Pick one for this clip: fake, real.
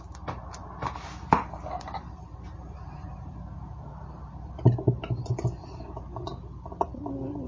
real